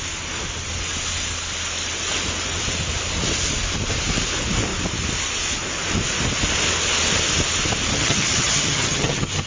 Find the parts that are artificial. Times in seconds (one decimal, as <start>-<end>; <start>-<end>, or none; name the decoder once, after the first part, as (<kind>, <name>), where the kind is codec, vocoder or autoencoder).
7.9-9.5 (vocoder, HiFi-GAN)